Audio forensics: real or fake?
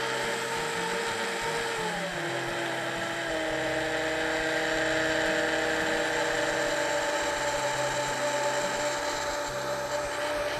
real